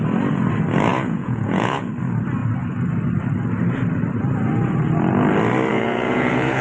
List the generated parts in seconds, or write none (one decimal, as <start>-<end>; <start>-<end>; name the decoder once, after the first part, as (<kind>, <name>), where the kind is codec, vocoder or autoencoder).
0.9-1.9 (vocoder, Vocos); 5.7-6.6